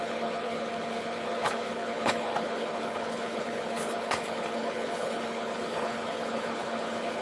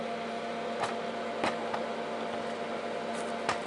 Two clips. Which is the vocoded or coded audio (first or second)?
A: first